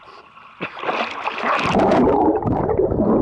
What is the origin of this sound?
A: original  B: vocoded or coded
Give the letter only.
A